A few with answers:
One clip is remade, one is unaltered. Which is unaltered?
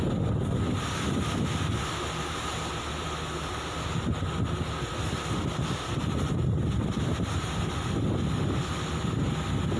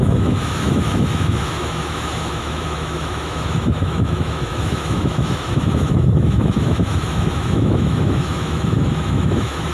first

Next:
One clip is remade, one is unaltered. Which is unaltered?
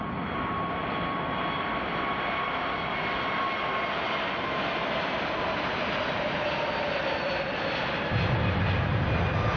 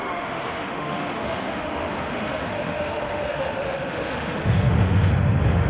first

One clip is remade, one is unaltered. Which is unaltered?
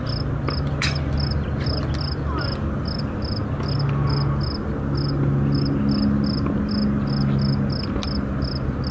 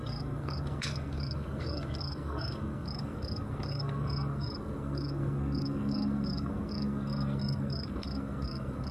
first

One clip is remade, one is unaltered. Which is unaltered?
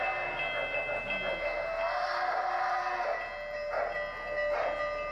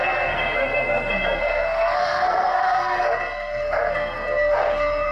first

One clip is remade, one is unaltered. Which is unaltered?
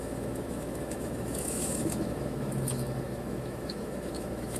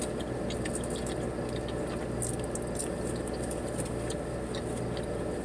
second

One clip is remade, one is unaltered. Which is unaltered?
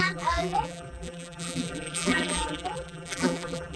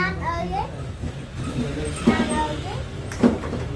second